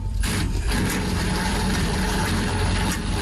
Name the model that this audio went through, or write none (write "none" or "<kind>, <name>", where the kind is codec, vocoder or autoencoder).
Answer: vocoder, BigVGAN v2